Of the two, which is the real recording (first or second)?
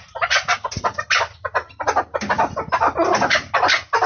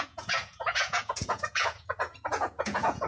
first